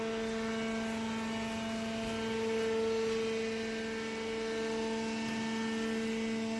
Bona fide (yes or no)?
yes